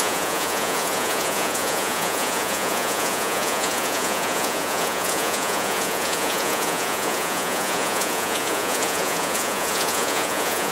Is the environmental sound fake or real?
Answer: fake